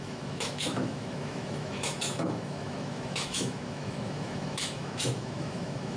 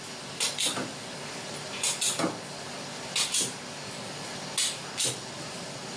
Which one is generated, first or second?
first